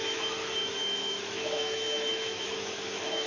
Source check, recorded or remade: remade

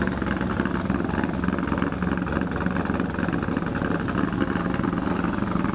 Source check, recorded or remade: recorded